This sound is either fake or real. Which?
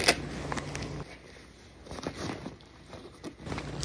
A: real